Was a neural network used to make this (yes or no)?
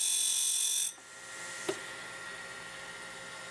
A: no